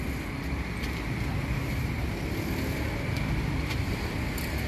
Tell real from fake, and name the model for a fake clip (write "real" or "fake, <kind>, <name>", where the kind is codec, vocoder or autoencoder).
real